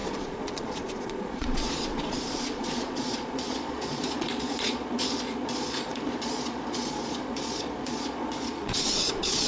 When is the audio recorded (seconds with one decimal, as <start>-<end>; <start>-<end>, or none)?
none